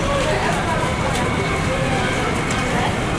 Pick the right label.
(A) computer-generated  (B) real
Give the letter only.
B